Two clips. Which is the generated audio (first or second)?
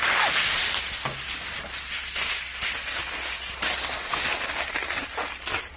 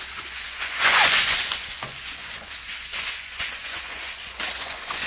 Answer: second